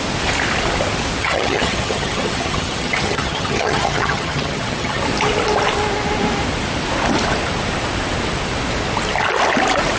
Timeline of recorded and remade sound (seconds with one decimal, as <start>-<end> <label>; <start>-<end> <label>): 0.0-1.2 recorded; 1.2-5.0 remade; 5.0-10.0 recorded